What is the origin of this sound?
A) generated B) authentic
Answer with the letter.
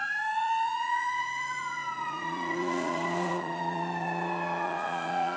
A